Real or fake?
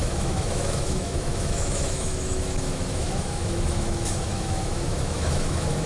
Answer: fake